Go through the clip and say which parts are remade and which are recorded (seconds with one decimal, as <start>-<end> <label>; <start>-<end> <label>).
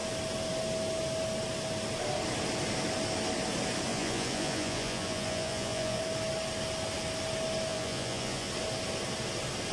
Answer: 0.0-3.9 recorded; 3.9-6.0 remade; 6.0-7.7 recorded; 7.7-8.5 remade; 8.5-9.7 recorded